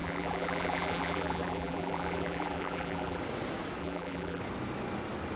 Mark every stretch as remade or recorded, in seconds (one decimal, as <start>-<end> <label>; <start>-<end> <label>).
0.0-3.2 remade; 3.2-3.8 recorded; 3.8-4.4 remade; 4.4-5.4 recorded